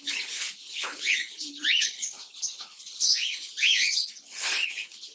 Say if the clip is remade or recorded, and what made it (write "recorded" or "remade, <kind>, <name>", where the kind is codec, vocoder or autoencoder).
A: remade, codec, HILCodec